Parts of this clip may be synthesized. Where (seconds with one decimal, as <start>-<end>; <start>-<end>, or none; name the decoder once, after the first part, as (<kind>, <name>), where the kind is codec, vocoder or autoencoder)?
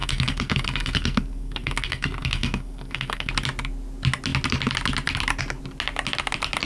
0.0-3.3 (codec, SNAC)